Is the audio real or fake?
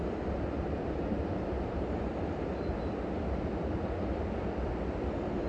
real